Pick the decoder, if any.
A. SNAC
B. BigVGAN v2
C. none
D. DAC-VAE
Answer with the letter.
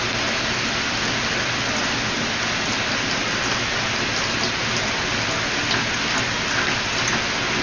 C